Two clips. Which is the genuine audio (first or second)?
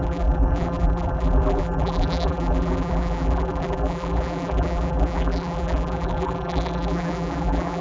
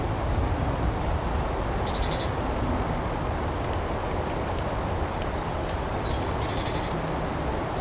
second